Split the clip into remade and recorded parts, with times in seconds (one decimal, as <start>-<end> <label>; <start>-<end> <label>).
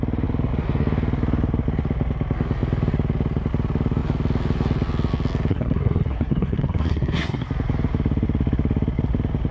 0.0-5.5 recorded; 5.5-7.5 remade; 7.5-9.5 recorded